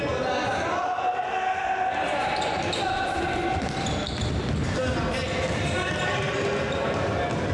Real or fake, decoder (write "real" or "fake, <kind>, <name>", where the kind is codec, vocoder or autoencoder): real